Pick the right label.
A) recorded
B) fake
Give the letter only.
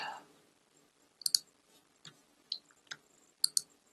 A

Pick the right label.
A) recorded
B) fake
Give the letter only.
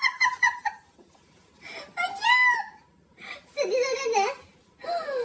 A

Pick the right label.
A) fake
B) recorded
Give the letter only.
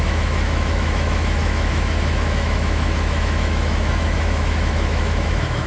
A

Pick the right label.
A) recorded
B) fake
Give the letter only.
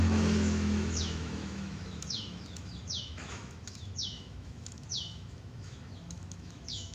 B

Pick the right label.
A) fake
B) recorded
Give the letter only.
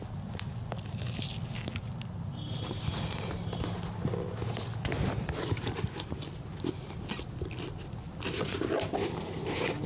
B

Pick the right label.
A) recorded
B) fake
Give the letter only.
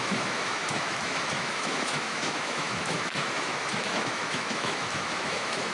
B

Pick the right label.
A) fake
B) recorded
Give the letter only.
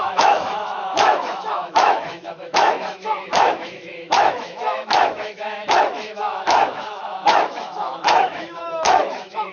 A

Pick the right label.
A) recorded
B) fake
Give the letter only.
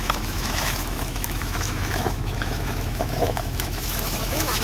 B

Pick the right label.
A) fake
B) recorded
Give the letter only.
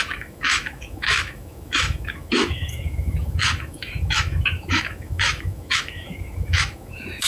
A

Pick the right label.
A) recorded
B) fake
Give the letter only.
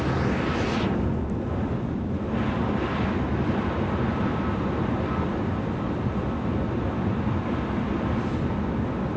A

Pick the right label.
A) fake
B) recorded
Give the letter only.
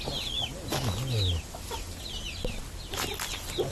B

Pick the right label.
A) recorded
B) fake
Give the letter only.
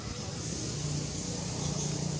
A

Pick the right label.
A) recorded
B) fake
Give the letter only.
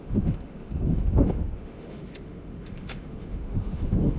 B